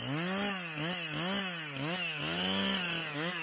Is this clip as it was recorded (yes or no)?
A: yes